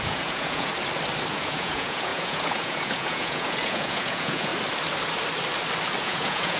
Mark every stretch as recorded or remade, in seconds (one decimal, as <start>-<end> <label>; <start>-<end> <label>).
0.0-0.7 remade; 0.7-1.3 recorded; 1.3-4.5 remade; 4.5-6.0 recorded; 6.0-6.6 remade